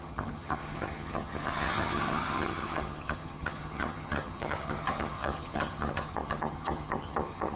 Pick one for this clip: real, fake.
fake